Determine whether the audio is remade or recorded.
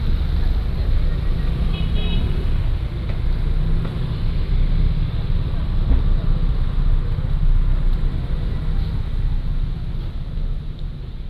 recorded